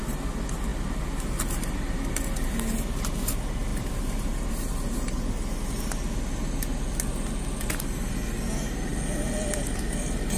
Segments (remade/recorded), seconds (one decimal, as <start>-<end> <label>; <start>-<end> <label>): 0.0-3.7 recorded; 3.7-4.5 remade; 4.5-10.4 recorded